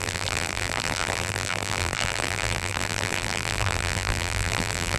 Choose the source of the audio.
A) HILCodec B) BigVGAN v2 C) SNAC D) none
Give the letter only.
B